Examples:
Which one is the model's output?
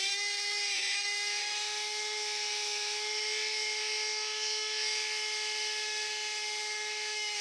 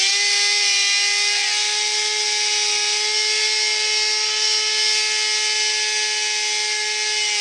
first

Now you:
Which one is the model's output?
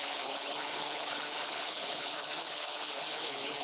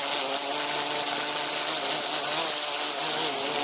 first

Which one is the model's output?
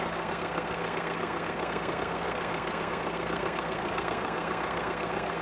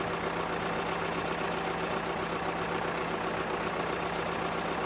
first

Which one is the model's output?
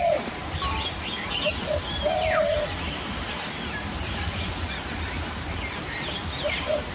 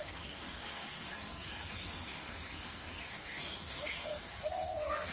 second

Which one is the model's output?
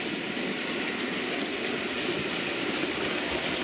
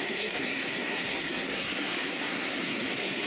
second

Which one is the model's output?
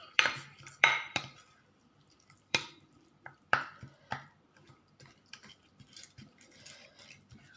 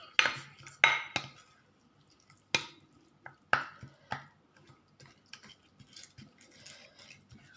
first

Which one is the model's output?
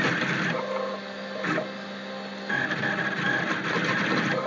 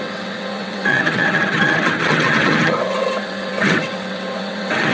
second